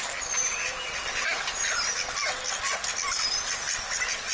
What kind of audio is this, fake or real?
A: real